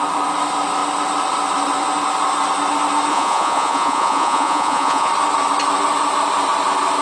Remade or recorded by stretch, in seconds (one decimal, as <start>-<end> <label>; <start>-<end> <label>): 0.0-3.1 recorded; 3.1-5.1 remade; 5.1-7.0 recorded